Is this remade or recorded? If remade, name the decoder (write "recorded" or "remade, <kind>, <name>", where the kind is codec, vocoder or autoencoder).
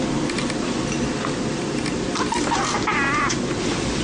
recorded